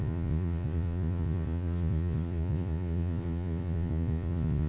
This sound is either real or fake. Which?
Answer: fake